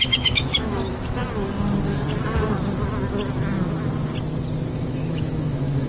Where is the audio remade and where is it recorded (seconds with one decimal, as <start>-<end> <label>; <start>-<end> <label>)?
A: 0.0-1.2 remade; 1.2-4.7 recorded; 4.7-5.9 remade